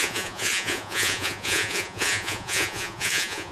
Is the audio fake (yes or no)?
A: yes